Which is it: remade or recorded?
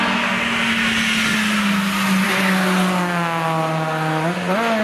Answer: recorded